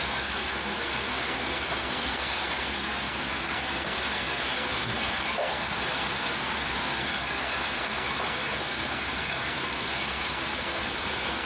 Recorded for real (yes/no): no